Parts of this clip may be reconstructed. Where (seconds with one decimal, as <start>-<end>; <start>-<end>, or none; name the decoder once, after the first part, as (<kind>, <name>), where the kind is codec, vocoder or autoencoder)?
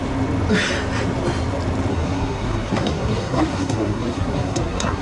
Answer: 1.9-5.0 (codec, SNAC)